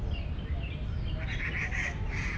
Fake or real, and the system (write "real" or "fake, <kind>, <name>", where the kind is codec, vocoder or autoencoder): real